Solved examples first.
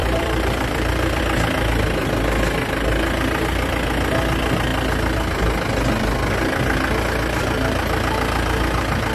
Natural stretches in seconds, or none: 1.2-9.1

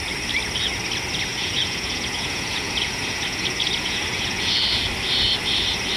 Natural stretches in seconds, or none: 0.0-1.3; 4.9-6.0

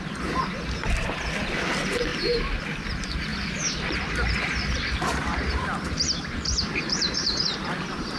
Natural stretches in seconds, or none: 0.0-3.3

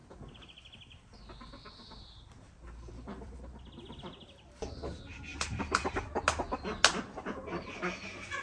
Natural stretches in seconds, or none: 3.3-4.2; 4.8-5.3; 5.9-8.4

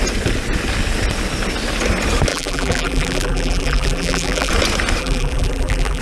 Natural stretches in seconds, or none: 0.0-2.3; 4.5-5.0